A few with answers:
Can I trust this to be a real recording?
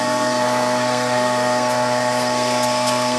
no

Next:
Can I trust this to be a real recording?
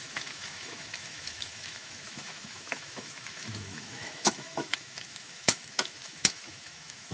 no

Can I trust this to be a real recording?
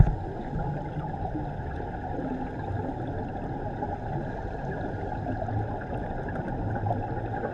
yes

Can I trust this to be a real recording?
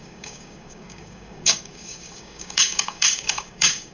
no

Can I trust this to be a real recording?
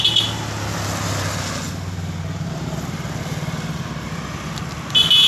yes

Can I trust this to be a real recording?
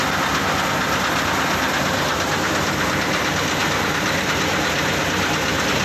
yes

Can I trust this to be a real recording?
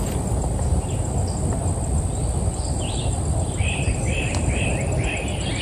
yes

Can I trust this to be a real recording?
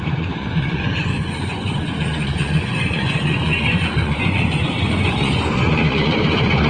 no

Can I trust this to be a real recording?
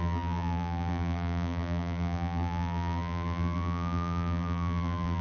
no